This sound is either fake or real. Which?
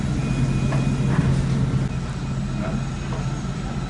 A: real